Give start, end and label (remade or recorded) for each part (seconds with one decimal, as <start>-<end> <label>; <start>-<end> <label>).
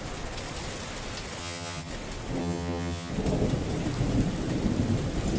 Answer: 0.0-1.4 recorded; 1.4-1.9 remade; 1.9-2.4 recorded; 2.4-3.1 remade; 3.1-5.4 recorded